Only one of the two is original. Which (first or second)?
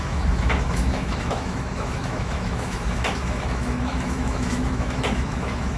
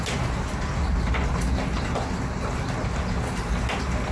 second